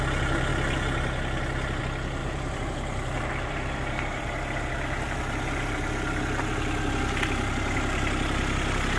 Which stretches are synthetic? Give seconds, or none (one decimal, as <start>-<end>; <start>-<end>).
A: 2.2-5.9